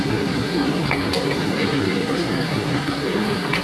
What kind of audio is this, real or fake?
fake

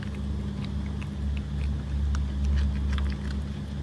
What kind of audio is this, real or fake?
real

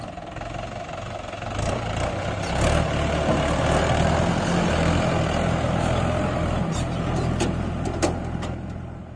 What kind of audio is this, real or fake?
real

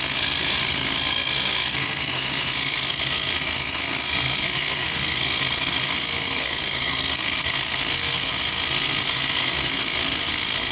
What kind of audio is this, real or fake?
fake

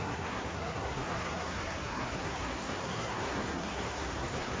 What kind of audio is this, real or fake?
fake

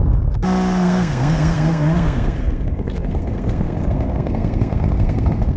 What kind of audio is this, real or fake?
fake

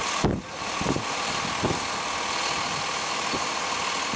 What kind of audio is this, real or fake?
real